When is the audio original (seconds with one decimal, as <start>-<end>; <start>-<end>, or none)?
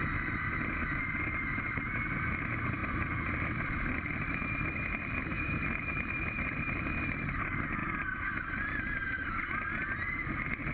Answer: 0.0-2.8; 7.0-10.7